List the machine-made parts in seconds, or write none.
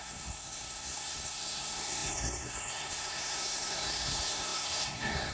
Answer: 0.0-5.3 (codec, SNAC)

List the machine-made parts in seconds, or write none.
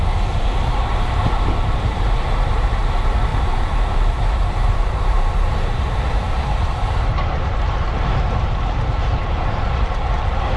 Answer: 0.0-10.6 (vocoder, BigVGAN v2)